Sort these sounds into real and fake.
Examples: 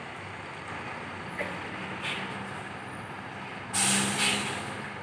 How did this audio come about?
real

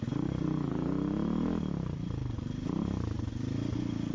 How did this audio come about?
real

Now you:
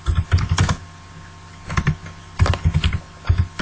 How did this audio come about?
real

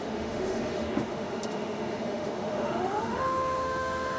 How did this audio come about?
fake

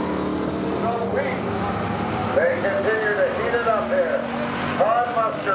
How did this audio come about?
real